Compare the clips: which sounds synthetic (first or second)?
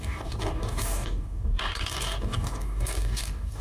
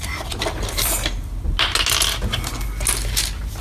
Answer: first